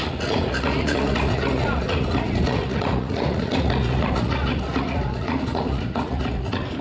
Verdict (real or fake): fake